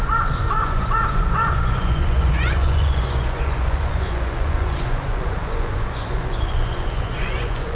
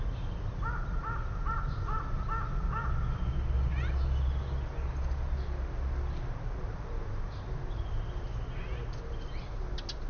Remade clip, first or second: first